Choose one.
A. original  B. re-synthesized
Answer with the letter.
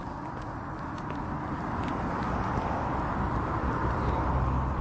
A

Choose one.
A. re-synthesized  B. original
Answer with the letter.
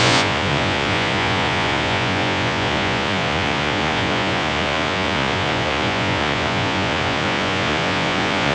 A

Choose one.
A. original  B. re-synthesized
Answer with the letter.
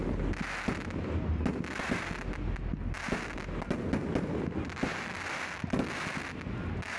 A